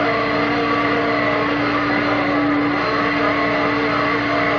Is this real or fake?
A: real